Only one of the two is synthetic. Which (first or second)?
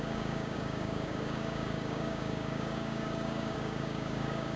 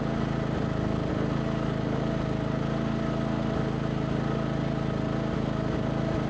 first